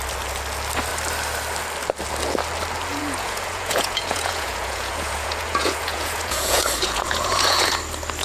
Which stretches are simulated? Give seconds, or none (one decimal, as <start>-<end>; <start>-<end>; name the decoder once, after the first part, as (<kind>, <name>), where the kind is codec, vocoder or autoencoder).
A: 2.9-7.7 (vocoder, Vocos)